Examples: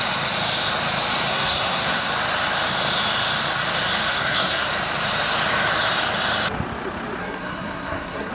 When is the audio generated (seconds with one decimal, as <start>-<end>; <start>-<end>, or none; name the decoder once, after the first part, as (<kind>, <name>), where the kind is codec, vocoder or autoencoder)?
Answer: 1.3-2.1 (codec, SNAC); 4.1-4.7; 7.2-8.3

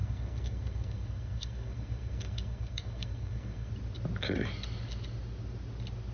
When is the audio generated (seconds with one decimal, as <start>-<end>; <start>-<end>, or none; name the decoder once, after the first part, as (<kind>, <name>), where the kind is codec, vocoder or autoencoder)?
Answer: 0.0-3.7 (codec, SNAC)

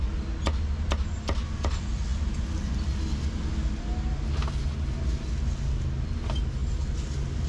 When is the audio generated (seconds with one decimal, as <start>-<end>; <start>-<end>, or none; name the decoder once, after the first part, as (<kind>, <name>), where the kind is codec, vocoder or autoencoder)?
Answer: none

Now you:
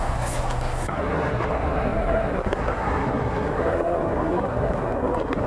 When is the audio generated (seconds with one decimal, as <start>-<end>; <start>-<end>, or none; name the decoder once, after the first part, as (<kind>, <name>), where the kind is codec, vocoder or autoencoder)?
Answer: 0.0-5.5 (codec, SNAC)

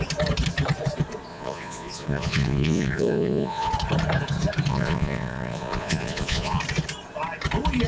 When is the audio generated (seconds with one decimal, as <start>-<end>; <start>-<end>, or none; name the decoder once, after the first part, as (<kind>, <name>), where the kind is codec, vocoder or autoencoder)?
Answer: 1.3-3.7 (vocoder, Vocos); 4.7-6.6

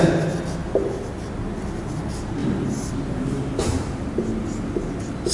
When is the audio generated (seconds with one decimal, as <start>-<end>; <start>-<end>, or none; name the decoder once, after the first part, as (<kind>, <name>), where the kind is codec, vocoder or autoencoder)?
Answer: 2.4-2.9 (vocoder, BigVGAN v2); 3.6-4.1